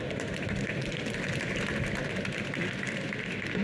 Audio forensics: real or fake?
fake